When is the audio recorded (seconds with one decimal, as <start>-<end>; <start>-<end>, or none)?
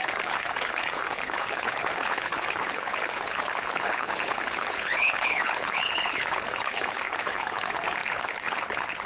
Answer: none